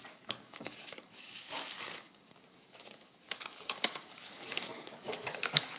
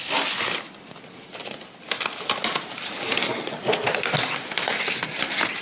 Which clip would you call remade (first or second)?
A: first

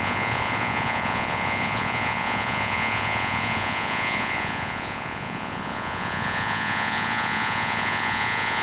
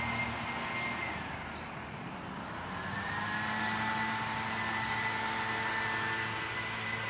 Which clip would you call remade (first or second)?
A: first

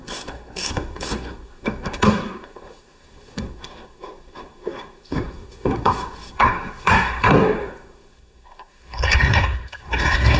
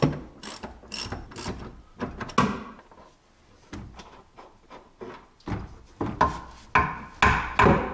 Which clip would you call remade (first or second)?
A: first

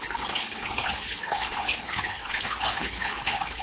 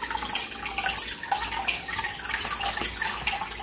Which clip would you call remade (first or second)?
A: first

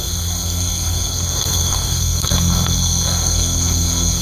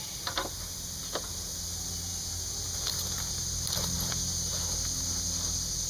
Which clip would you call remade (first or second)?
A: first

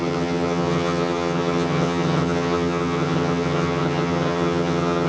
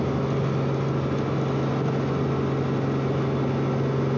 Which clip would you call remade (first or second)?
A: first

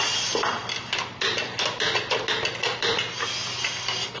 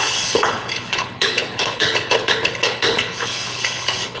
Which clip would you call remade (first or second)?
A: second